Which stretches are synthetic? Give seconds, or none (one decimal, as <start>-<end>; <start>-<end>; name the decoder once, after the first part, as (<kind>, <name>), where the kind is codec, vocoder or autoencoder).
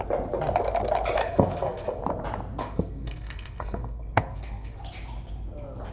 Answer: 1.2-2.0 (codec, SNAC); 2.6-4.8